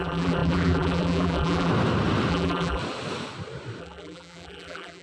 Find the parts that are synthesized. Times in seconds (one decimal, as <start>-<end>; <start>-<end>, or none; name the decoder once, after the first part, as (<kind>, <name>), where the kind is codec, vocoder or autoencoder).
0.0-1.7 (vocoder, BigVGAN v2); 2.3-2.8; 3.8-5.0